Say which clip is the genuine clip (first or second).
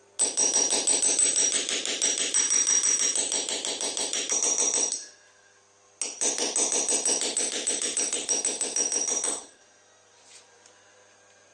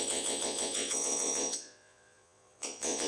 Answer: first